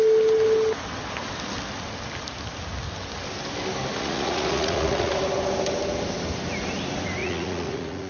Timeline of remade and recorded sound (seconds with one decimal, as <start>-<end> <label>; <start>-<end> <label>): 0.0-3.9 recorded; 3.9-5.1 remade; 5.1-7.2 recorded; 7.2-8.1 remade